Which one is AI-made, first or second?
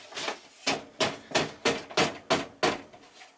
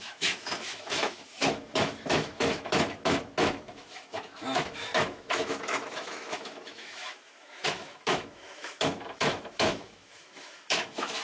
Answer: second